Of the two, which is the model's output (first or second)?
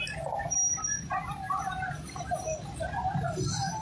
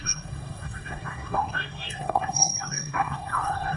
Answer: second